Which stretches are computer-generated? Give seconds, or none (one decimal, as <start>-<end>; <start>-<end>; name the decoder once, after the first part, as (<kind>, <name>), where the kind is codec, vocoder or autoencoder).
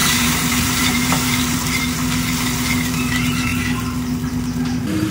0.0-1.8 (vocoder, BigVGAN v2)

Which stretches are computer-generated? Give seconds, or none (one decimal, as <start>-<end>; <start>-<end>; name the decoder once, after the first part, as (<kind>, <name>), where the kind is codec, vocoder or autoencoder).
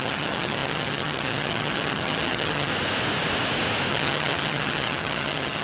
0.0-2.7 (vocoder, HiFi-GAN); 3.9-5.6